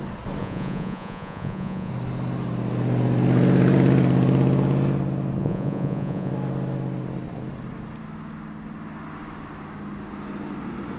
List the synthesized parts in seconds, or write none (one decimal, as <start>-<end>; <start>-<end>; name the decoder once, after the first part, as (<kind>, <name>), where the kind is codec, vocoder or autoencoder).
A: 0.4-1.9 (vocoder, Vocos); 5.4-6.3